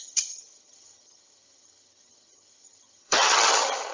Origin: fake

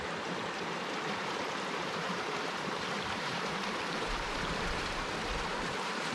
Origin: fake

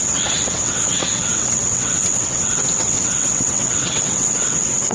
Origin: fake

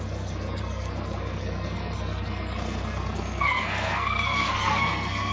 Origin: fake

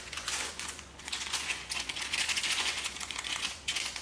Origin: fake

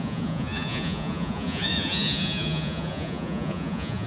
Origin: fake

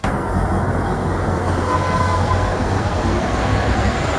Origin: fake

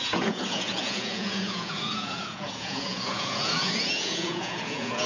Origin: fake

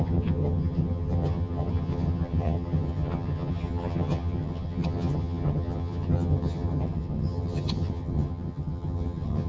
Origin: fake